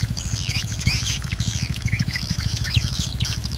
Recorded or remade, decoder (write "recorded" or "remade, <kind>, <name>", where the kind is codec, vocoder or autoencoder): remade, autoencoder, DAC-VAE